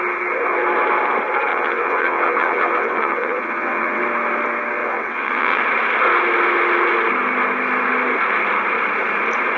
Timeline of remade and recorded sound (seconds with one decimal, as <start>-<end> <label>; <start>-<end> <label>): 0.0-1.5 recorded; 1.5-4.0 remade; 4.0-4.8 recorded; 4.8-5.6 remade; 5.6-9.6 recorded